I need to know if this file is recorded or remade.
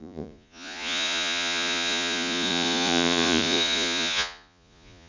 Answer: remade